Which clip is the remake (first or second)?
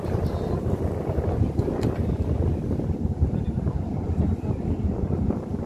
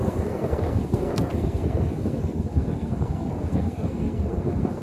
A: second